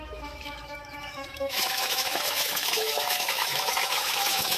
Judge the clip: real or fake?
fake